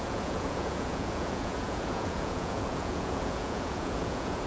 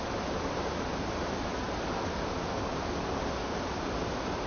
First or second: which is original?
second